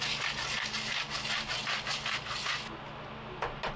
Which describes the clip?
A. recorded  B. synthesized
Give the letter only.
A